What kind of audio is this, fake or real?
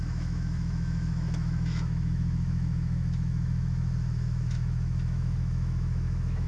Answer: fake